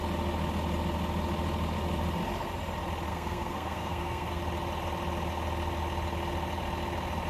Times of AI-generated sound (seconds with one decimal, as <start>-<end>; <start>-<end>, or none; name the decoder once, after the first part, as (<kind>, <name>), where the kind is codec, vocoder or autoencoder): 3.1-4.4 (codec, SNAC)